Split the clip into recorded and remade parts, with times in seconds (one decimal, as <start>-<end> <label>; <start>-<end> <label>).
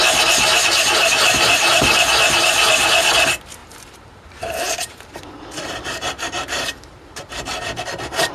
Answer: 0.0-3.6 recorded; 3.6-7.4 remade; 7.4-8.3 recorded